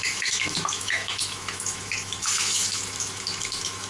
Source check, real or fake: fake